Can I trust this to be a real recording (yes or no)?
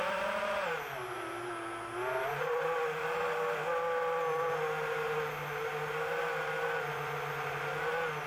yes